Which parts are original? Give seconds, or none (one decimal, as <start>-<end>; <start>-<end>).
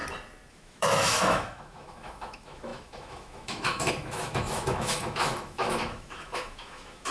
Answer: 0.0-0.5